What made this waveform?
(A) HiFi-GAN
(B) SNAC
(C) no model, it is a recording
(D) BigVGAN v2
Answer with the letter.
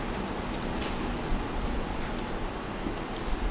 C